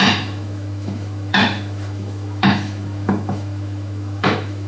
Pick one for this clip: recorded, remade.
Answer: remade